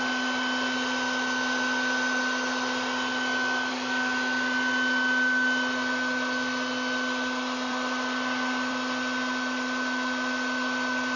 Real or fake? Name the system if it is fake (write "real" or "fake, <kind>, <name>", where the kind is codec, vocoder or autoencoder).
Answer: real